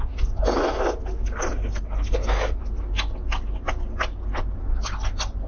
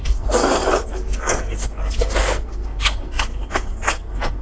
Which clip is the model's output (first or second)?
second